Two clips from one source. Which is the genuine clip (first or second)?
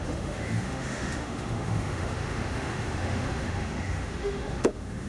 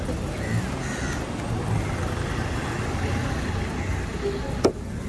second